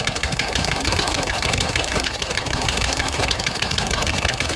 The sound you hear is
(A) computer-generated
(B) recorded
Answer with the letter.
A